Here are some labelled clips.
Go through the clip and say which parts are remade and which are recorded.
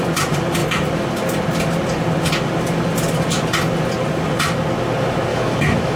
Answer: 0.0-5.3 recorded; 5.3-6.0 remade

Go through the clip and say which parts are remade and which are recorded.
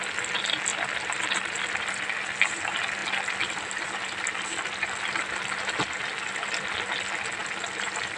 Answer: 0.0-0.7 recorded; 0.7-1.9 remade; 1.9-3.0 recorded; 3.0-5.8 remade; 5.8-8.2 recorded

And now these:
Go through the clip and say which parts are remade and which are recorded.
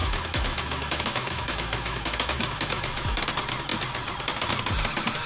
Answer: 0.0-3.2 remade; 3.2-5.3 recorded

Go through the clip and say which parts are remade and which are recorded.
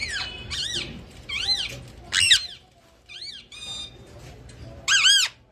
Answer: 0.0-5.5 recorded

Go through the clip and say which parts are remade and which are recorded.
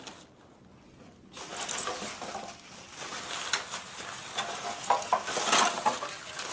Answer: 0.0-6.5 recorded